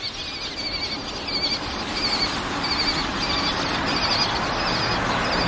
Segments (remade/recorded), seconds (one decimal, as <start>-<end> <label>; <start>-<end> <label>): 0.0-5.5 recorded